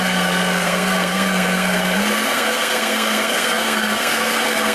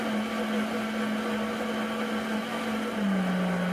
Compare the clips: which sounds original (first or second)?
second